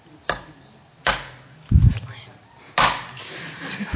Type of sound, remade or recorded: recorded